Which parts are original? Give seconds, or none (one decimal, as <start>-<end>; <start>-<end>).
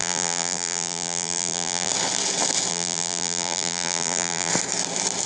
1.9-2.7; 4.5-5.3